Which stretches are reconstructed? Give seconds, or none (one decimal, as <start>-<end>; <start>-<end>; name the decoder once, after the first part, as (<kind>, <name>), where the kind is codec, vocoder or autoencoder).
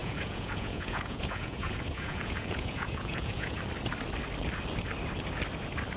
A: 0.0-3.6 (vocoder, Vocos)